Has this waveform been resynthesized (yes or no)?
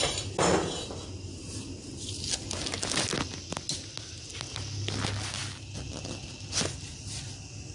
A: no